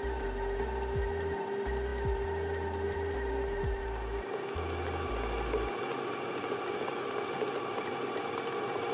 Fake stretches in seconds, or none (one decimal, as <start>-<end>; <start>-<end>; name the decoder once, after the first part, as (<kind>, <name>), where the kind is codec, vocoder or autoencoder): none